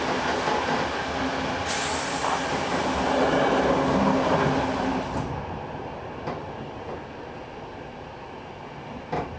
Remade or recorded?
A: recorded